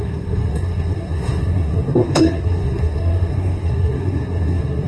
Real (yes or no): no